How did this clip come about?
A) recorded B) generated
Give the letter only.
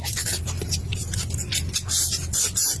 A